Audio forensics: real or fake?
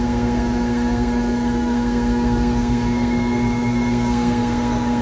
fake